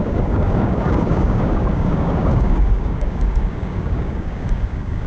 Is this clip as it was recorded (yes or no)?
no